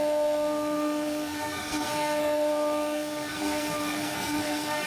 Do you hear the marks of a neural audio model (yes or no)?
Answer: yes